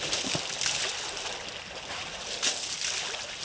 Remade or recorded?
recorded